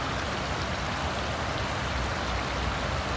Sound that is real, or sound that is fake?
real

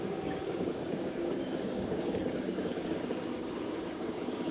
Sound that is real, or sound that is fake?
fake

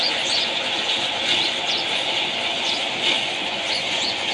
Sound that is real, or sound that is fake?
fake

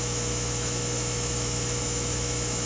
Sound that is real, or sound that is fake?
fake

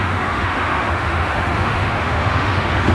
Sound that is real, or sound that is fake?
fake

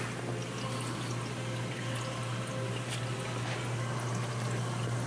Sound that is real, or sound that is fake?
real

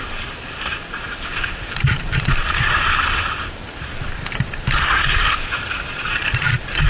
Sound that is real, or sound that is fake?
fake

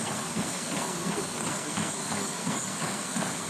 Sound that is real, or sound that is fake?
fake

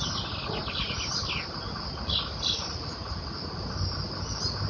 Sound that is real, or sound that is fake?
real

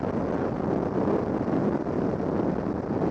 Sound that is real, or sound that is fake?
real